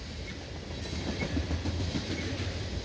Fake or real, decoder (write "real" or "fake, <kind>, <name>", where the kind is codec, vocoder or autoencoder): real